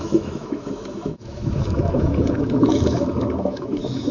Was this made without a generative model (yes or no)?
no